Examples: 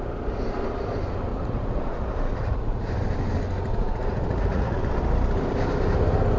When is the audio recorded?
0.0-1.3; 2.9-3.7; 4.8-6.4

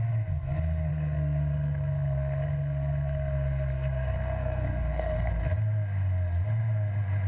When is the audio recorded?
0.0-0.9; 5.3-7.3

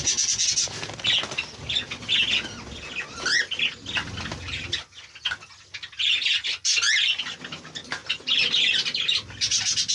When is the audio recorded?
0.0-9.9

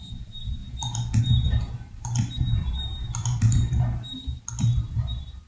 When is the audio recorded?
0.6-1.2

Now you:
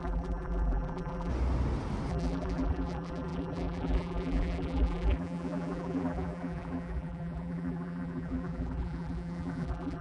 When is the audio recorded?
1.3-2.1